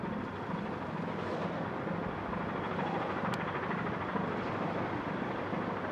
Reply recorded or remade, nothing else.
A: recorded